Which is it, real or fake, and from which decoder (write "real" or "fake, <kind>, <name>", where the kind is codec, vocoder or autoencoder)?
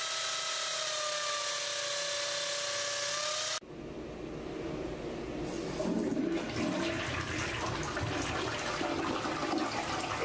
real